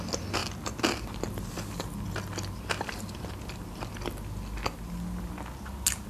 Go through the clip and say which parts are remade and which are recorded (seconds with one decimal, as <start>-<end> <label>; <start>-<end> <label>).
0.0-6.1 recorded